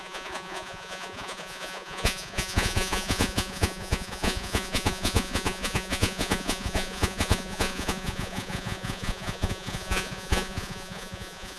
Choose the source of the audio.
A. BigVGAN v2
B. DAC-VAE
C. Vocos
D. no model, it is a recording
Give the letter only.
C